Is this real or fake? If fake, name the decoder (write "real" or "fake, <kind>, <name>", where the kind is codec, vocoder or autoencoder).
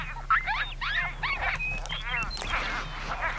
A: real